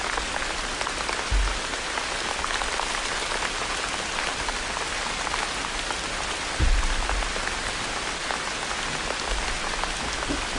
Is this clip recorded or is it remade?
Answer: recorded